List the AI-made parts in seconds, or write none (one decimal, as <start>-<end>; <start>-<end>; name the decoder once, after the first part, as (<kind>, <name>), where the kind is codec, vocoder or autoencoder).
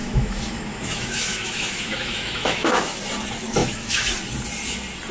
0.0-3.0 (autoencoder, DAC-VAE); 3.6-4.1